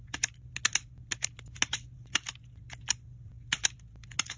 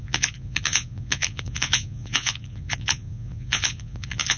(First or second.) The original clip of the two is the first